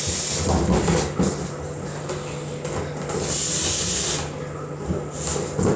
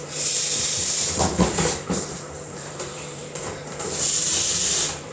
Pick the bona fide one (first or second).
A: first